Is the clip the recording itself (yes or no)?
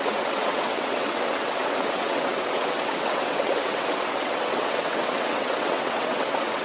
no